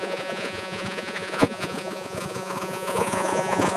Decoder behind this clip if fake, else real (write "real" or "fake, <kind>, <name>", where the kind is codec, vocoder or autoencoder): fake, vocoder, Vocos